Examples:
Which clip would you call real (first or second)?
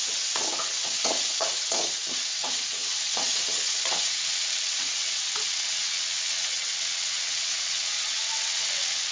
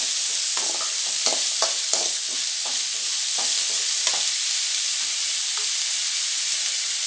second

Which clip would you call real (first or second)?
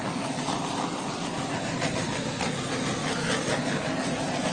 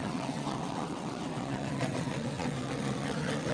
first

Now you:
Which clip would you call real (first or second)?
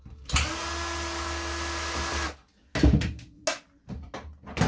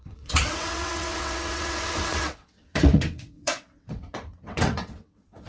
first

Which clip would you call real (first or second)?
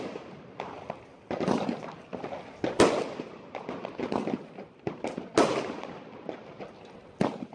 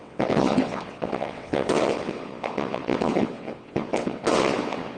first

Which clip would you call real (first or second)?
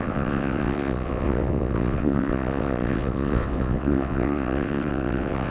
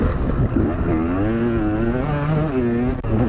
second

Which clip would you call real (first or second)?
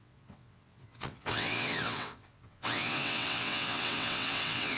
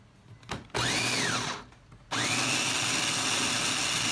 second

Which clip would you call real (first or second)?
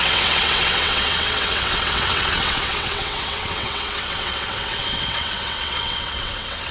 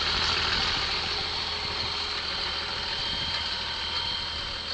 second